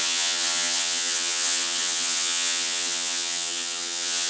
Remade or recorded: remade